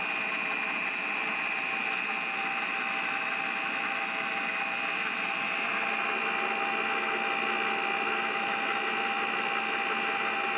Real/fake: real